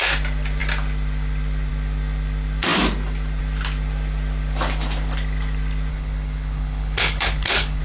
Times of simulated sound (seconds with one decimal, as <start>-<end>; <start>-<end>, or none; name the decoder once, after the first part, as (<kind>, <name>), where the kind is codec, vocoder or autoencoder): 5.9-7.8 (codec, HILCodec)